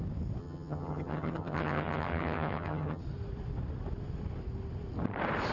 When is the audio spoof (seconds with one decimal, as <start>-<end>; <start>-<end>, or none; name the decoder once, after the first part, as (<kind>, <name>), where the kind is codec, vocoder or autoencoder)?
0.4-3.0 (vocoder, HiFi-GAN)